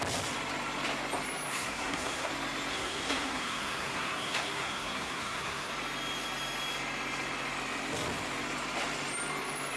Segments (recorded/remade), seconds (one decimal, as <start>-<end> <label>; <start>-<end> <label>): 0.0-1.5 recorded; 1.5-2.3 remade; 2.3-2.7 recorded; 2.7-5.7 remade; 5.7-9.8 recorded